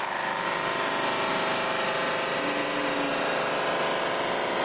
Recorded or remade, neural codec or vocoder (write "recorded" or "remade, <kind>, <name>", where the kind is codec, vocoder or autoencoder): recorded